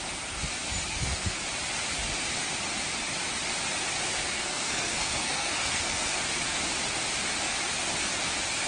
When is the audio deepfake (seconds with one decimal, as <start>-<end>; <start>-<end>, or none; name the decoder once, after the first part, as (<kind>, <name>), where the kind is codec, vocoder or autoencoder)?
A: 0.9-1.4 (codec, SNAC); 4.2-6.2